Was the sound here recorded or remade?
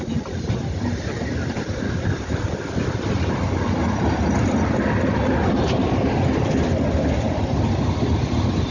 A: recorded